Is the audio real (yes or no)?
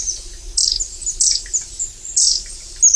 yes